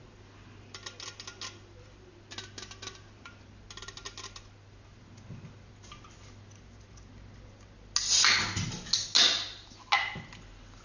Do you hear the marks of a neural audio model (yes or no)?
no